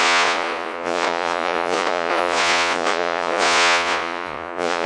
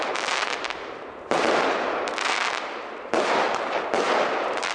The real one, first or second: second